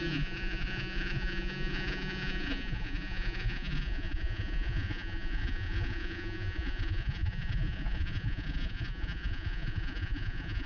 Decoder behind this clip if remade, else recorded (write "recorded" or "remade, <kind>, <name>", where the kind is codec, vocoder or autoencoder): remade, vocoder, Vocos